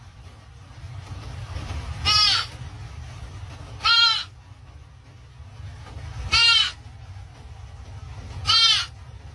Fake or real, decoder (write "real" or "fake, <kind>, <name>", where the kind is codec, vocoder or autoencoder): real